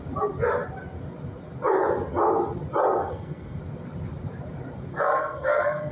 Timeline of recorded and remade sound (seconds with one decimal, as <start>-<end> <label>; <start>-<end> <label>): 0.0-3.0 recorded; 3.0-3.6 remade; 3.6-4.9 recorded; 4.9-5.9 remade